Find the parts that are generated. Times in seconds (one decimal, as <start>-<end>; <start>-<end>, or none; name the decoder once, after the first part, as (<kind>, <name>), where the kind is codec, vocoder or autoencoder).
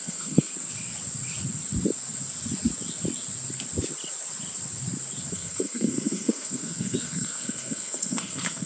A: 0.0-0.5 (codec, SNAC); 5.3-8.7